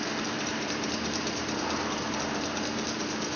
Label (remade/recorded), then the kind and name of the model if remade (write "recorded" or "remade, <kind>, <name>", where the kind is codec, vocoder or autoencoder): recorded